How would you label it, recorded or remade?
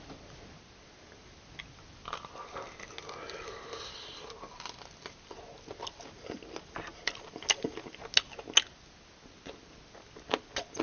recorded